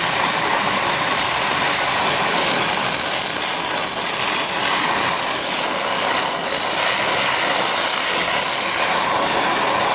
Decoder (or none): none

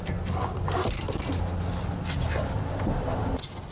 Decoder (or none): none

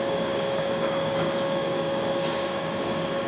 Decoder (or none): codec, DAC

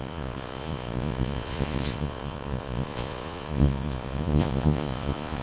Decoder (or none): vocoder, Vocos